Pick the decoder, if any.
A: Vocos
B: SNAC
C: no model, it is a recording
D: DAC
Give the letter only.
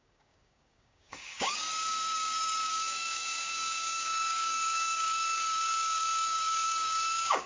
D